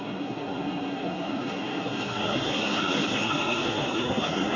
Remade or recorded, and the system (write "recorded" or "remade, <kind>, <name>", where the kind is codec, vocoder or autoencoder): remade, codec, SNAC